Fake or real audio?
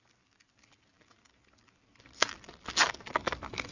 real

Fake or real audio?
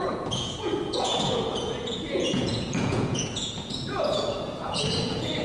fake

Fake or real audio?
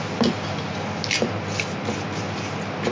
real